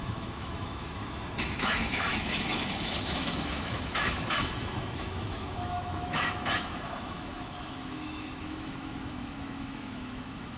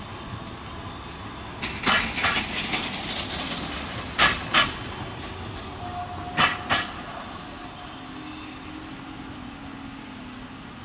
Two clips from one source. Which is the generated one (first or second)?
first